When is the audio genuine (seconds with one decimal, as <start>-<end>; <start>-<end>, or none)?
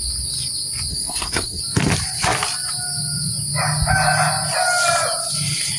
0.0-0.9; 1.6-5.8